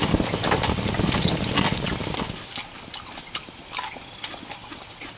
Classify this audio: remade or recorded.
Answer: recorded